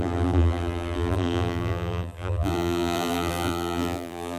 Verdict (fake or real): fake